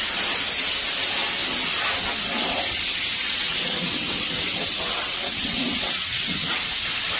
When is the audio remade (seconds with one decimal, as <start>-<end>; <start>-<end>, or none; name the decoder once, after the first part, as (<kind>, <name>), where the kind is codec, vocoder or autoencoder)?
3.2-6.5 (vocoder, WaveNeXt)